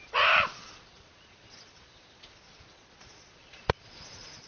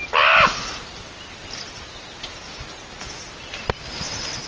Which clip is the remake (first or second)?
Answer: first